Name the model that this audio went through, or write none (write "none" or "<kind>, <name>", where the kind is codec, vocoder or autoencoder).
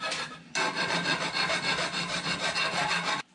none